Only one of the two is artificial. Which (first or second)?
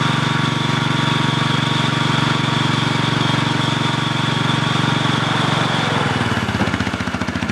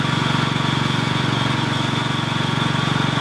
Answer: second